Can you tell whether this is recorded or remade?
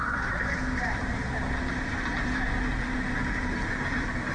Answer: recorded